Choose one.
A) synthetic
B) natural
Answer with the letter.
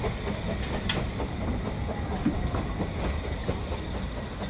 B